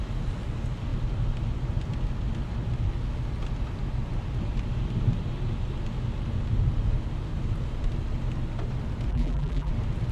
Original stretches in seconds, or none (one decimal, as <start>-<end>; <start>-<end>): 0.0-9.1; 9.7-10.1